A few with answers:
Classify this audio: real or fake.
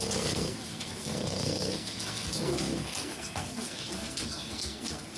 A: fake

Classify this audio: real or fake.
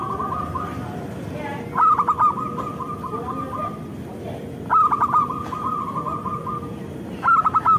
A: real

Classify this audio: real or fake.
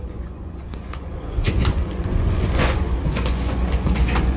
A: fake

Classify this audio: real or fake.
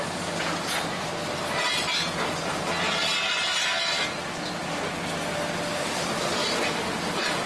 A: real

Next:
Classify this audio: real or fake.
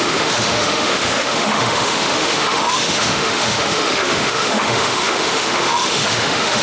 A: fake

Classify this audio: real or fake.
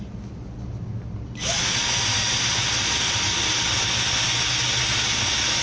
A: real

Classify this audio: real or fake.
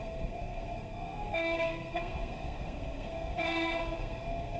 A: fake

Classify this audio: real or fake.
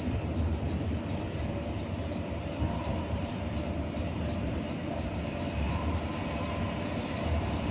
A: fake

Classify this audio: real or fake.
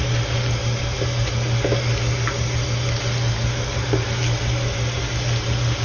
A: real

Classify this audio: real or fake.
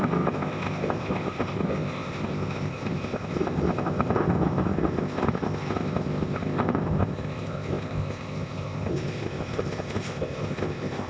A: fake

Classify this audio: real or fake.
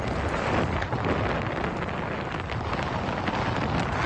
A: real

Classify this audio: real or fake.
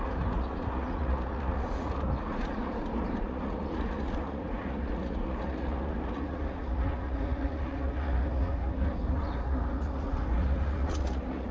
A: fake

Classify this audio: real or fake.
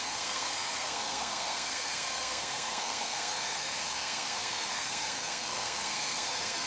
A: fake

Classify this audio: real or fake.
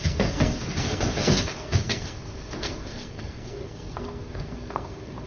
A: fake